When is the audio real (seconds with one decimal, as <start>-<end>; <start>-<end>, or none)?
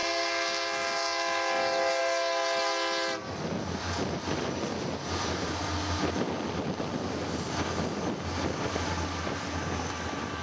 0.0-10.4